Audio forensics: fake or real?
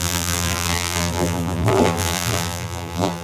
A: fake